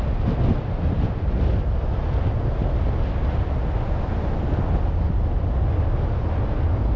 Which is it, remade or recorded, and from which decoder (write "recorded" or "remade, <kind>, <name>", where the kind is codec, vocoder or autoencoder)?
recorded